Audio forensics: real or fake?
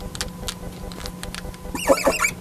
real